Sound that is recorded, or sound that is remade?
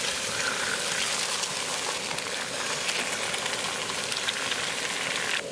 recorded